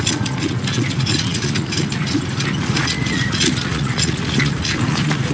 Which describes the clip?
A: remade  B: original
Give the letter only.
A